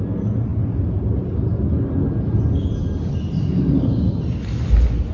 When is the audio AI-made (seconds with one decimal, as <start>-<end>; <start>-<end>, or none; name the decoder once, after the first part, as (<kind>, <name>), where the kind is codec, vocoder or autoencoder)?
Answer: none